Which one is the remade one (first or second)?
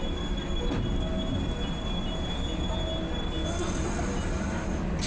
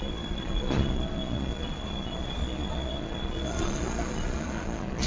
second